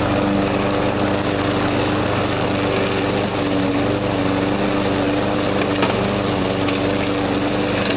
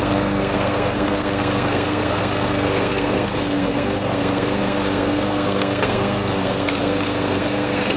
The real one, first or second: first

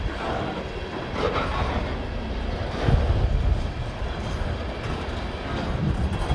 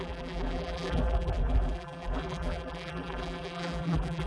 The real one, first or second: first